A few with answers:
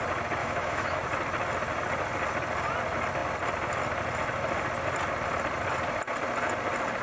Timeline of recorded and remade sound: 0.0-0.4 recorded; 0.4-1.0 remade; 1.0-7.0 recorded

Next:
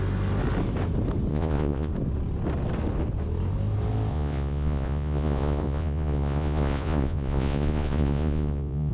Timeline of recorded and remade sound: 0.0-1.3 recorded; 1.3-1.9 remade; 1.9-4.1 recorded; 4.1-8.9 remade

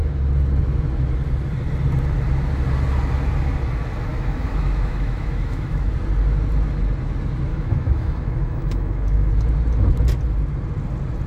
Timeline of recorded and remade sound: 0.0-4.1 recorded; 4.1-5.9 remade; 5.9-7.5 recorded; 7.5-9.3 remade; 9.3-11.3 recorded

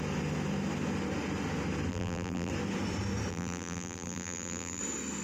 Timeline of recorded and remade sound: 0.0-1.9 recorded; 1.9-2.5 remade; 2.5-3.3 recorded; 3.3-4.8 remade; 4.8-5.2 recorded

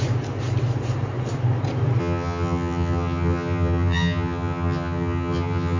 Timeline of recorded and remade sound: 0.0-2.0 recorded; 2.0-5.8 remade

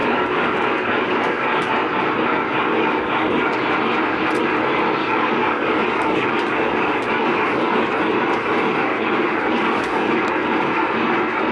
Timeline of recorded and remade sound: 0.0-1.7 remade; 1.7-2.3 recorded; 2.3-3.6 remade; 3.6-5.0 recorded; 5.0-7.9 remade; 7.9-8.8 recorded; 8.8-10.2 remade; 10.2-11.5 recorded

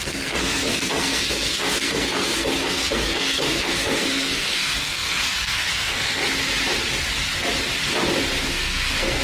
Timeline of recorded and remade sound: 0.0-6.2 remade; 6.2-8.4 recorded; 8.4-9.2 remade

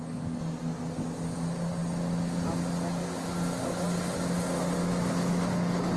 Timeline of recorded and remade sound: 0.0-4.8 recorded; 4.8-5.5 remade; 5.5-6.0 recorded